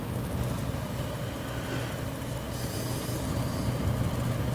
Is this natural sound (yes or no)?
yes